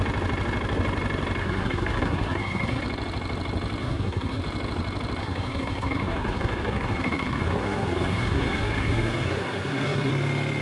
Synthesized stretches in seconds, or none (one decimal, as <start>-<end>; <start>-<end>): 1.4-2.8; 3.8-4.4; 5.2-10.1